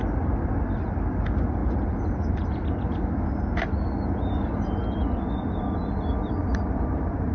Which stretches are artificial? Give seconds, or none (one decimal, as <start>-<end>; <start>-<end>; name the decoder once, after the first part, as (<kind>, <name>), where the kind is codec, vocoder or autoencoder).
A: 6.4-7.3 (vocoder, BigVGAN v2)